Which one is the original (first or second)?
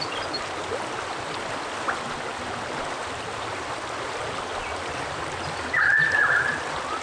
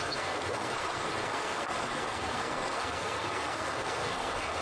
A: first